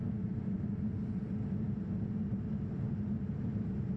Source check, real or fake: real